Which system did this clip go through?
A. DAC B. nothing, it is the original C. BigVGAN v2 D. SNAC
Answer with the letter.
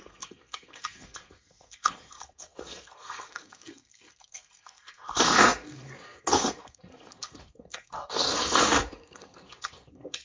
D